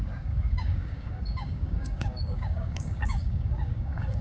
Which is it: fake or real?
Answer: fake